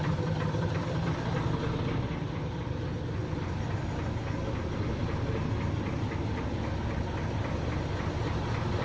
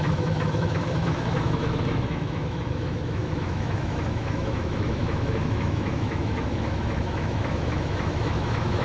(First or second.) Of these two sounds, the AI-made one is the second